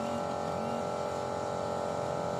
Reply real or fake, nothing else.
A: real